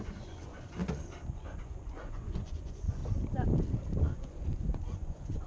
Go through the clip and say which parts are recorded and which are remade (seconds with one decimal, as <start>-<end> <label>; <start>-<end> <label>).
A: 0.0-0.8 remade; 0.8-1.3 recorded; 1.3-3.0 remade; 3.0-4.0 recorded; 4.0-5.5 remade